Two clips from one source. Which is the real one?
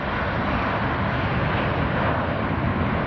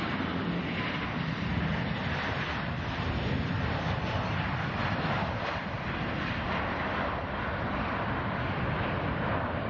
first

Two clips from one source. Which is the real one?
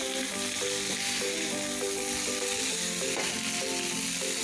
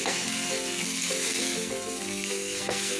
first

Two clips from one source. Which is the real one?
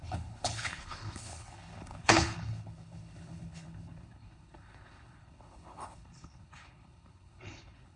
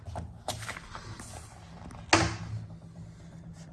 second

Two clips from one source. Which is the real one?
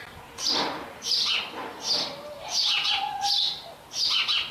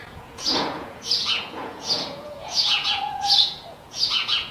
first